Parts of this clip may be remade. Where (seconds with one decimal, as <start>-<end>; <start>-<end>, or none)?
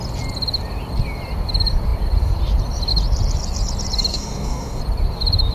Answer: 4.1-4.8